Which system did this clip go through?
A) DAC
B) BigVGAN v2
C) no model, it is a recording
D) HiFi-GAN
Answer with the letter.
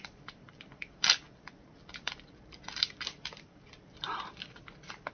B